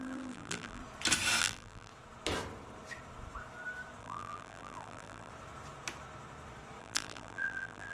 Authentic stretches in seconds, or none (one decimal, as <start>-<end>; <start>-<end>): 0.8-1.4; 1.9-4.0; 5.3-6.8